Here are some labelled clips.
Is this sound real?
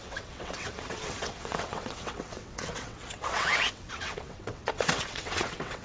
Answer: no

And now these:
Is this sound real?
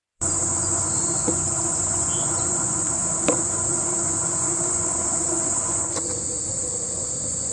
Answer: no